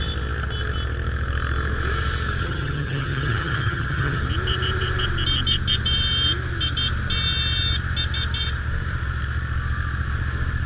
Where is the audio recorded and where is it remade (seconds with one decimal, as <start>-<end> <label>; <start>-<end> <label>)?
0.0-2.4 recorded; 2.4-4.2 remade; 4.2-10.7 recorded